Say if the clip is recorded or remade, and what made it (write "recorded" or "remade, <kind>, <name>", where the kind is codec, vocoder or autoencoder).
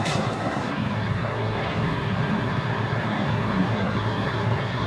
remade, codec, SNAC